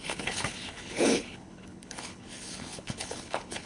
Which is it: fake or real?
fake